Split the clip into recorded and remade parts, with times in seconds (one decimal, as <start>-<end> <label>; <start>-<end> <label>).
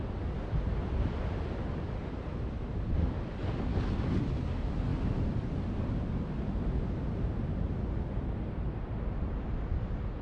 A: 0.0-10.2 recorded